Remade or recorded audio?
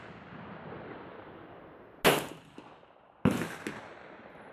recorded